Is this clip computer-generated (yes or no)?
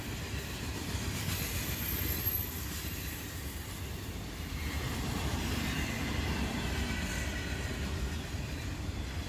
no